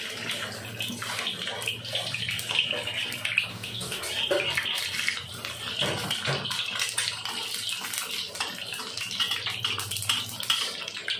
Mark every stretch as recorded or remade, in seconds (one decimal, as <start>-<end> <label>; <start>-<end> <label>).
0.0-3.5 recorded; 3.5-4.0 remade; 4.0-11.2 recorded